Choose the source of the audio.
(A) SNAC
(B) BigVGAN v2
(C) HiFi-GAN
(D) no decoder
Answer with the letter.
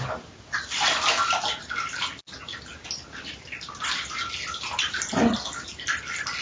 D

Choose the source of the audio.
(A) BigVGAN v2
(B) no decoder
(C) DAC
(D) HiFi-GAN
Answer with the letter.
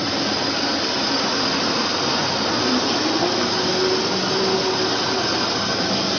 B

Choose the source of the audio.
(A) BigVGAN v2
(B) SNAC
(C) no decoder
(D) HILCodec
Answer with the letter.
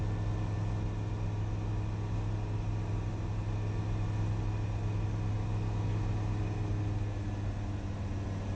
C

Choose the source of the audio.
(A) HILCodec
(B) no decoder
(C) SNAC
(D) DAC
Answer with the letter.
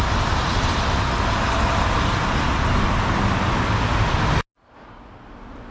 B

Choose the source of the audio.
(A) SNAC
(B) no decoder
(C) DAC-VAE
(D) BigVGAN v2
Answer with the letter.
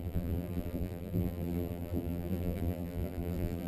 D